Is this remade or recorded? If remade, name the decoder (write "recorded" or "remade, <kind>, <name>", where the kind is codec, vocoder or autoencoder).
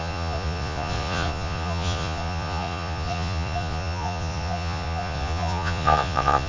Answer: remade, vocoder, Vocos